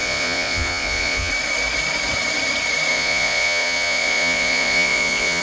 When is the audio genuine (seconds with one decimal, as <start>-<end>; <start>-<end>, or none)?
1.3-2.9